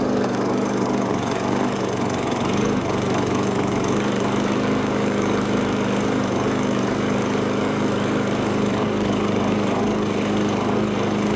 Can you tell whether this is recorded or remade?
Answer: remade